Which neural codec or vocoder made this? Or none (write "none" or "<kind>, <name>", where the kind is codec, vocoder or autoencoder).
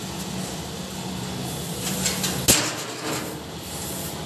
none